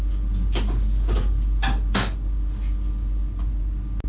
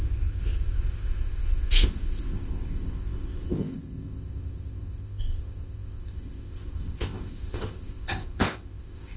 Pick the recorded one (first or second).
first